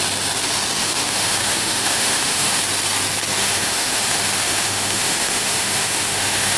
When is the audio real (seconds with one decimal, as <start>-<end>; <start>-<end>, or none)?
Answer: 0.0-0.8; 2.6-3.4